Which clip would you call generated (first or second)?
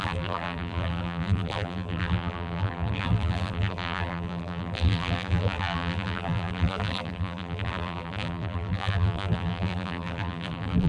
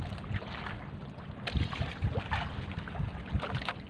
first